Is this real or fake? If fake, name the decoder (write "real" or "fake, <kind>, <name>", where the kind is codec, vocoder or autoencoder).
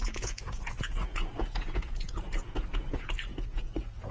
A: fake, vocoder, Vocos